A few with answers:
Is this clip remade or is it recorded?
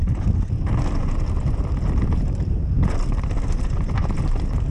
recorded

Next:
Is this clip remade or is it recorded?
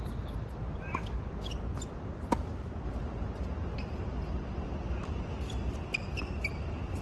recorded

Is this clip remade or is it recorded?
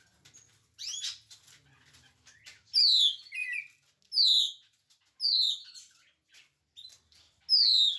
recorded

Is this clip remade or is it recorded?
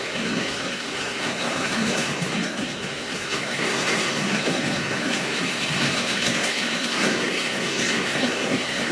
remade